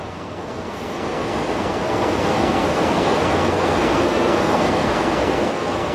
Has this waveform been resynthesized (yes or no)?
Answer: yes